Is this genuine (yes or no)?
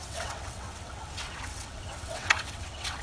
no